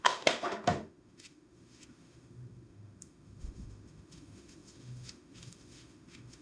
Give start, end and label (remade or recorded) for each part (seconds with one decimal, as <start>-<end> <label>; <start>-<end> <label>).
0.0-6.4 remade